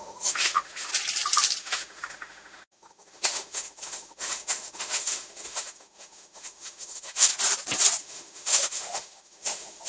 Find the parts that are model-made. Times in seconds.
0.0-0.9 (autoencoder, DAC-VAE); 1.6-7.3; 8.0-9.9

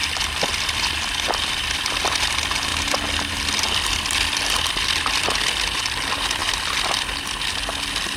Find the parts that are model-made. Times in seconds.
0.0-2.3 (vocoder, BigVGAN v2); 2.7-3.3; 6.4-7.0

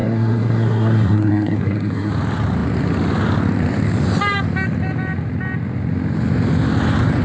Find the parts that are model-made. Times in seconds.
0.0-2.1 (codec, SNAC)

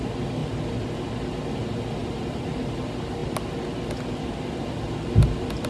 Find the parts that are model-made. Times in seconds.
none

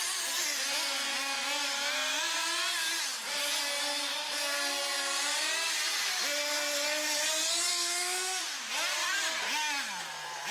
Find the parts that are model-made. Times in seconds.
7.7-8.4 (autoencoder, DAC-VAE)